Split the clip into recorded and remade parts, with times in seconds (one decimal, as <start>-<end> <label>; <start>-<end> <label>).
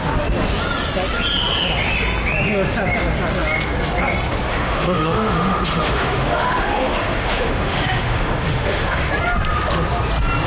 0.0-4.5 recorded; 4.5-9.1 remade; 9.1-10.5 recorded